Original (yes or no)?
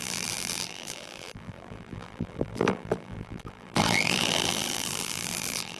no